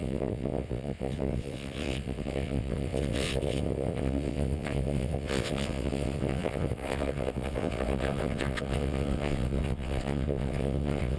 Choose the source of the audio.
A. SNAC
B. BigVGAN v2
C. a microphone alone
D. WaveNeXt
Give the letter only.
D